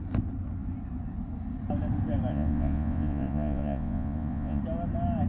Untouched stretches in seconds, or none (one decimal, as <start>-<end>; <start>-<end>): 0.0-2.3; 4.6-5.3